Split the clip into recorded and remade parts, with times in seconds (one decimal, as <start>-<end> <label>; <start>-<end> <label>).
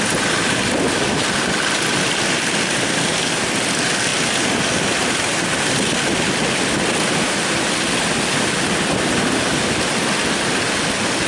0.0-11.3 recorded